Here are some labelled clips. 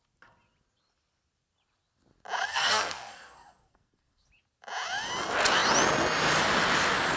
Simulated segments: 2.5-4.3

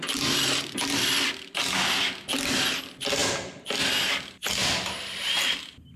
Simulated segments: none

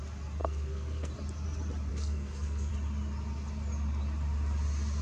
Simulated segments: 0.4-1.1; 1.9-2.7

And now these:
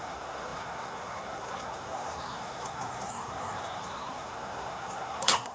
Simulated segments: 0.0-5.5

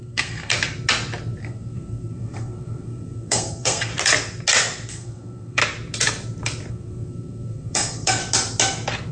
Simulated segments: 0.0-0.5; 1.4-3.9; 4.9-5.6; 6.7-8.2

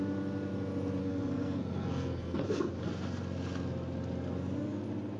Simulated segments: 1.0-2.7